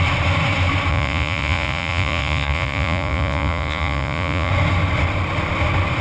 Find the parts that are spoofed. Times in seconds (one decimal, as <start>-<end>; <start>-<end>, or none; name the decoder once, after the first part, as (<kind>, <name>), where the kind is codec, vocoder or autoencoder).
0.9-4.5 (vocoder, Vocos)